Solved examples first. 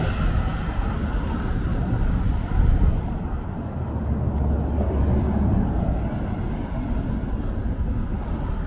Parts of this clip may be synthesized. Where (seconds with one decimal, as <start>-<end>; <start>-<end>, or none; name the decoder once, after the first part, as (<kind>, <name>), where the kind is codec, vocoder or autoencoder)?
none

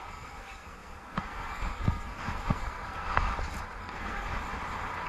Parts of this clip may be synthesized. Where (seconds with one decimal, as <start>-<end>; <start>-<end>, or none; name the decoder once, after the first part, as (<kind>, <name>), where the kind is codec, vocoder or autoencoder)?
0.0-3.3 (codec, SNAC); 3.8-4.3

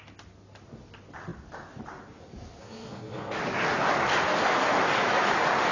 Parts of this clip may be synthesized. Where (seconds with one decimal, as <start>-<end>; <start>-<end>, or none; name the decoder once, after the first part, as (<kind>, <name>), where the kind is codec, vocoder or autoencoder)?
2.6-3.4 (codec, SNAC)

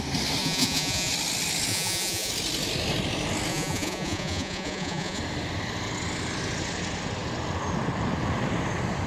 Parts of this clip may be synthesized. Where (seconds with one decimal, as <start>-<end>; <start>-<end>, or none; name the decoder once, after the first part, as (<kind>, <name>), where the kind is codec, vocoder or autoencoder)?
0.4-1.1 (vocoder, Vocos); 1.7-2.3; 3.5-5.2